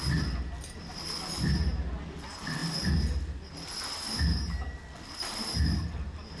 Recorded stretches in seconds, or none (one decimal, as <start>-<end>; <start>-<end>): 0.0-6.4